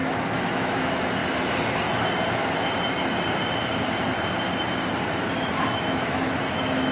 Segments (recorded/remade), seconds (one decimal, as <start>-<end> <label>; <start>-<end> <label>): 0.0-1.2 remade; 1.2-5.3 recorded; 5.3-6.9 remade